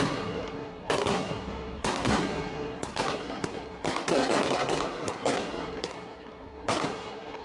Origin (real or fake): fake